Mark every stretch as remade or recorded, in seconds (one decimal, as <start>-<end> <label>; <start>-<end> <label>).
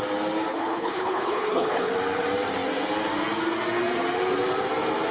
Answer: 0.0-0.5 recorded; 0.5-1.9 remade; 1.9-5.1 recorded